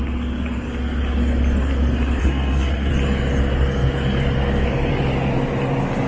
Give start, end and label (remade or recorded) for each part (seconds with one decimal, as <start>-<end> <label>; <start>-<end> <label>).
0.0-2.2 recorded; 2.2-2.9 remade; 2.9-6.1 recorded